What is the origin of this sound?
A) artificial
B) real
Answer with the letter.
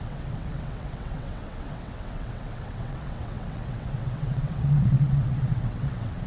A